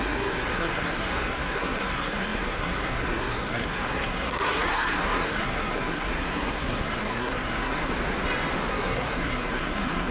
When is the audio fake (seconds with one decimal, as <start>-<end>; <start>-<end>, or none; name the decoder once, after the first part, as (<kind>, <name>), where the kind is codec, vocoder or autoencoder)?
0.0-7.9 (codec, SNAC); 8.7-10.1